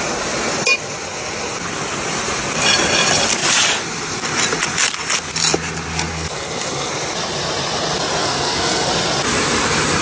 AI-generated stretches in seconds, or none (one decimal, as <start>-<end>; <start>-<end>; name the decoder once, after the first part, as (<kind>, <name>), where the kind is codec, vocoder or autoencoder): 6.1-6.9 (codec, SNAC); 8.2-8.9